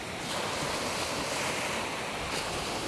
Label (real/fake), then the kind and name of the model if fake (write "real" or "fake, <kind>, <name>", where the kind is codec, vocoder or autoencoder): real